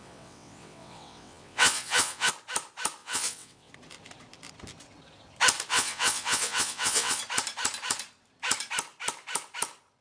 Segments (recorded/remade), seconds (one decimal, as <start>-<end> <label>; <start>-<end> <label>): 0.0-2.3 remade; 2.3-3.0 recorded; 3.0-3.7 remade; 3.7-5.7 recorded; 5.7-7.2 remade; 7.2-10.0 recorded